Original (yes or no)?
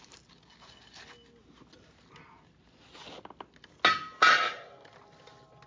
yes